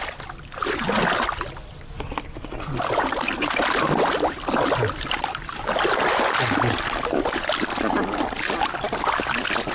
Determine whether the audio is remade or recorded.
recorded